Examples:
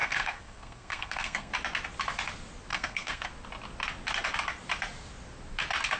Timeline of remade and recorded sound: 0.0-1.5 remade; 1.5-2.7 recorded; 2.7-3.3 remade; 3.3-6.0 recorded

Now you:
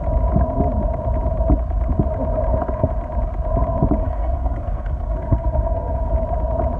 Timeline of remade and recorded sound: 0.0-4.0 recorded; 4.0-6.1 remade; 6.1-6.8 recorded

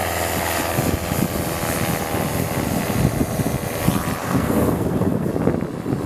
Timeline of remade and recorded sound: 0.0-4.2 recorded; 4.2-5.3 remade; 5.3-6.1 recorded

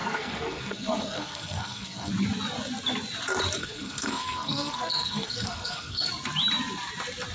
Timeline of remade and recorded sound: 0.0-2.1 remade; 2.1-3.6 recorded; 3.6-6.1 remade; 6.1-7.3 recorded

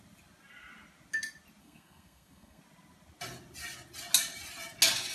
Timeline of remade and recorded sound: 0.0-1.6 recorded; 1.6-2.6 remade; 2.6-5.1 recorded

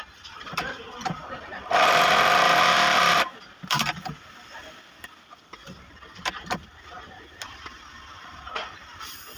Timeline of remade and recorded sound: 0.0-9.4 recorded

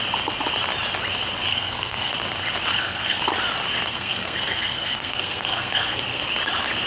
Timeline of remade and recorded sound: 0.0-1.5 recorded; 1.5-2.1 remade; 2.1-2.7 recorded; 2.7-3.2 remade; 3.2-3.9 recorded; 3.9-6.2 remade; 6.2-6.9 recorded

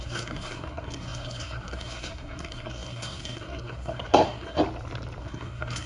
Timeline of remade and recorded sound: 0.0-4.6 remade; 4.6-5.2 recorded; 5.2-5.9 remade